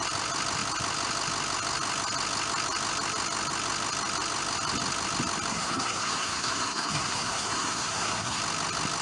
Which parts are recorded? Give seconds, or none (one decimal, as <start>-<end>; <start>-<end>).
0.0-5.5; 8.4-9.0